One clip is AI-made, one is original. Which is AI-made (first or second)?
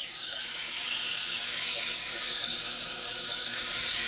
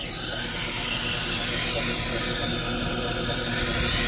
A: first